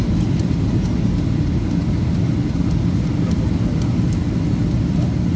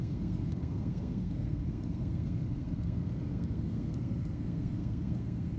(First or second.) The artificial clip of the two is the second